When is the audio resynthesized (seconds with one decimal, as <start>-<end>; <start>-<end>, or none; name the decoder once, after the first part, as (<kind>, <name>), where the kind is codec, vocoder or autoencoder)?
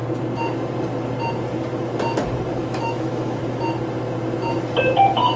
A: 2.6-3.4 (autoencoder, DAC-VAE)